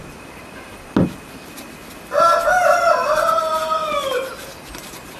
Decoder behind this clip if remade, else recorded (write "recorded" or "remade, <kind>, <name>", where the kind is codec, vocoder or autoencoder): recorded